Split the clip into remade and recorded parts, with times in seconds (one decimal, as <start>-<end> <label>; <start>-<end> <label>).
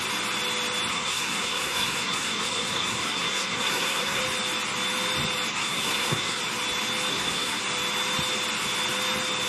0.0-0.9 recorded; 0.9-4.2 remade; 4.2-5.5 recorded; 5.5-6.4 remade; 6.4-7.1 recorded; 7.1-7.6 remade; 7.6-9.5 recorded